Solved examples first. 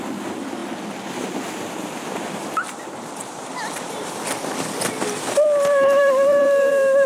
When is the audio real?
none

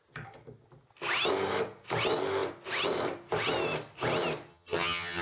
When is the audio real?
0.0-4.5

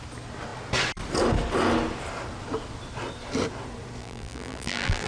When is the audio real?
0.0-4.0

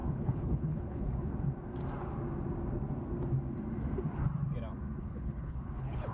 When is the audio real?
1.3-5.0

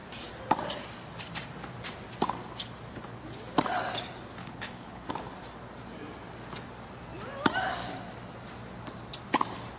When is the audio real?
0.0-4.4; 5.1-9.8

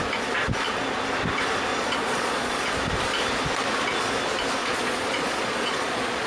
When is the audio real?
0.0-1.7; 2.7-4.6